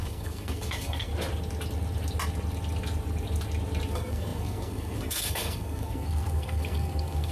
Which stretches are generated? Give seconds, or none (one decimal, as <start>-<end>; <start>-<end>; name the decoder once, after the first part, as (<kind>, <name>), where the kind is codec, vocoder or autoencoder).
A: 0.0-1.1 (codec, SNAC); 3.9-7.3